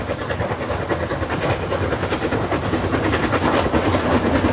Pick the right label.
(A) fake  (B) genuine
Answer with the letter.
B